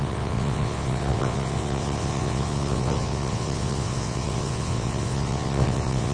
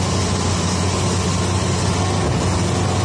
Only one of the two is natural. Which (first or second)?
second